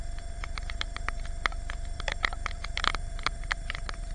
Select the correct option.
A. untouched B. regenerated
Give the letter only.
B